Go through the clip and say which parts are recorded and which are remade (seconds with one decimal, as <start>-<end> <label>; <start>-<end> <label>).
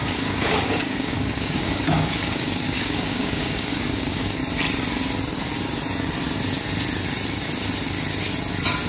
0.0-4.4 remade; 4.4-8.9 recorded